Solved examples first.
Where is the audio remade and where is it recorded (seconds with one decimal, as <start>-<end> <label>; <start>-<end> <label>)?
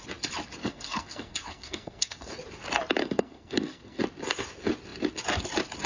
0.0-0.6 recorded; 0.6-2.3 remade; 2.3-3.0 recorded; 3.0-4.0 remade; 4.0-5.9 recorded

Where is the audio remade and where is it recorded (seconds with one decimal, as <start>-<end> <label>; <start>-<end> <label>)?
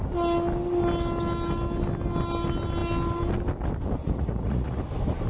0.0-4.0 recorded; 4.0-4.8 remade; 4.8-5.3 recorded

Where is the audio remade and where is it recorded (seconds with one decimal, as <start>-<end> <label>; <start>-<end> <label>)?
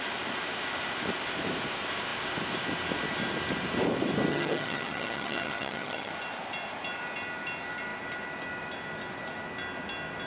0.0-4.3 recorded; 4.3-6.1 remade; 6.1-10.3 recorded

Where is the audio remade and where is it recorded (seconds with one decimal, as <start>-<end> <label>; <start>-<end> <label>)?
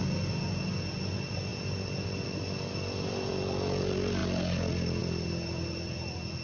0.0-6.4 recorded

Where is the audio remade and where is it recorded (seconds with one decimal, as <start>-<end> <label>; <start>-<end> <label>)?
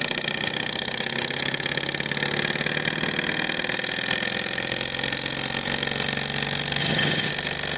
0.0-6.8 recorded; 6.8-7.3 remade; 7.3-7.8 recorded